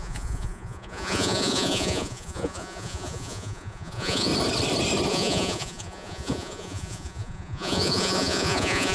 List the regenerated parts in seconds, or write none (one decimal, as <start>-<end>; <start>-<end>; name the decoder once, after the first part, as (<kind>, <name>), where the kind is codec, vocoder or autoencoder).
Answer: 0.0-4.3 (vocoder, Vocos); 5.1-8.9